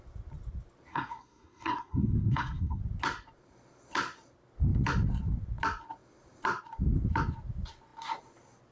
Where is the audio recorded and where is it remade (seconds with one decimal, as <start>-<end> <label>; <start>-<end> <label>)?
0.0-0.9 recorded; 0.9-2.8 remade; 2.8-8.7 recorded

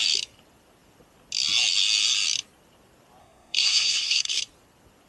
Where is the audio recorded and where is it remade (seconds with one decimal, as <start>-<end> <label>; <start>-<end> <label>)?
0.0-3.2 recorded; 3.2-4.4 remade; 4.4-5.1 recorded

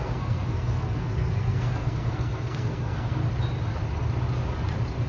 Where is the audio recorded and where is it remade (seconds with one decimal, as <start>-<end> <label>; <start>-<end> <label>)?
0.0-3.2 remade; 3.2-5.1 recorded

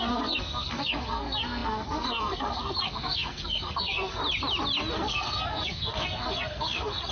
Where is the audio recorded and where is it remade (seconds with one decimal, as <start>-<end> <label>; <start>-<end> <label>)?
0.0-4.2 remade; 4.2-4.9 recorded; 4.9-7.1 remade